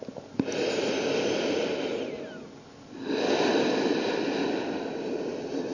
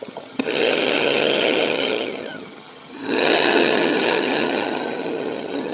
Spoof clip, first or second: second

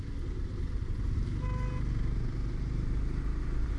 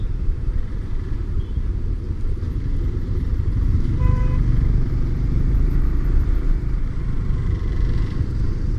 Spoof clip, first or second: second